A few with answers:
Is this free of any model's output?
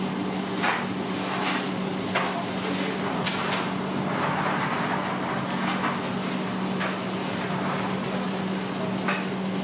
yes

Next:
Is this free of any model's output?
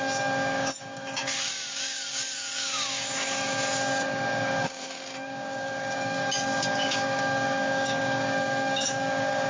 no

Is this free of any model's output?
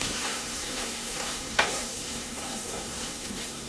no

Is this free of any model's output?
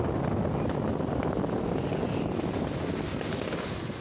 yes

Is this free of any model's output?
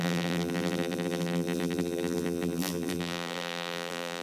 no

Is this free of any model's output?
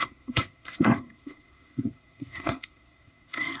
no